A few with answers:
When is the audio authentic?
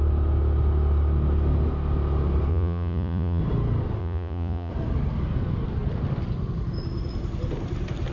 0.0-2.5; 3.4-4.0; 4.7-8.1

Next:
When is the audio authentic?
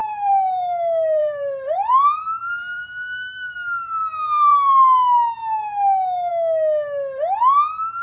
2.8-4.0; 4.7-8.0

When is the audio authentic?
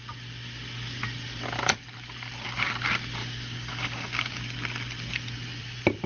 0.0-3.2; 4.4-6.1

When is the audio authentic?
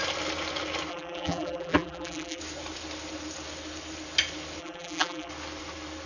0.0-0.9; 2.4-4.6; 5.3-6.1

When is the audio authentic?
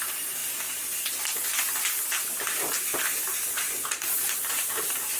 0.4-3.5